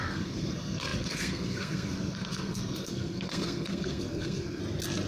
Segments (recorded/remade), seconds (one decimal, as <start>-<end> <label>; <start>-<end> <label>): 0.0-4.6 remade; 4.6-5.1 recorded